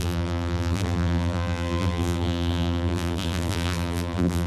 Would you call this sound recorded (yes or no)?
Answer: no